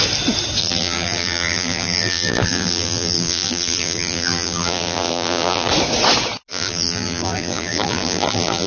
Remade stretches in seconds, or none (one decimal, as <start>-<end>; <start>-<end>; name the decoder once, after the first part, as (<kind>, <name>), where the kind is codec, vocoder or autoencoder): 0.6-5.7 (vocoder, BigVGAN v2); 6.5-8.7